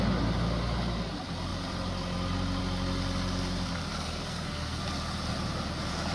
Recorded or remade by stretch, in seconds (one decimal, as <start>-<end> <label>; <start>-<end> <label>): 0.0-3.9 recorded; 3.9-4.8 remade; 4.8-6.1 recorded